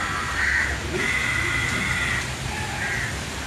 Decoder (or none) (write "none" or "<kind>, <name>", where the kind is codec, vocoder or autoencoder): none